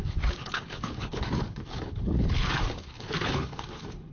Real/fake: fake